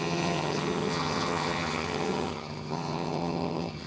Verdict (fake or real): fake